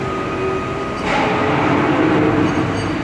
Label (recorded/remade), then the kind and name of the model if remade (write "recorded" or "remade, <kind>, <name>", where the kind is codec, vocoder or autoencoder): recorded